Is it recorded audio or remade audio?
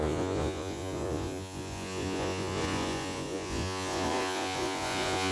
remade